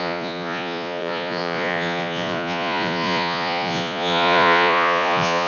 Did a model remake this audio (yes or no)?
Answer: yes